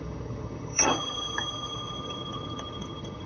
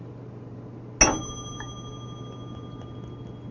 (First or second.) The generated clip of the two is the first